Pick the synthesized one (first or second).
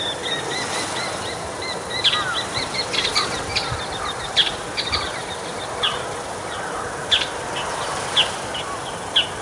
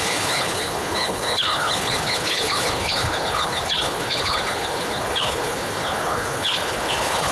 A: second